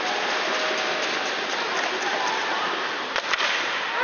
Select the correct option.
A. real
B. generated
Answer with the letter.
A